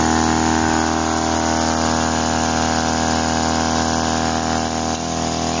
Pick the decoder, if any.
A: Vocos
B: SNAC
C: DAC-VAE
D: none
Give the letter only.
D